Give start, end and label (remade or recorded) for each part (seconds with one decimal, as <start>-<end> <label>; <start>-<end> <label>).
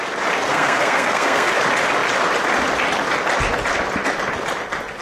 0.0-0.5 recorded; 0.5-1.5 remade; 1.5-5.0 recorded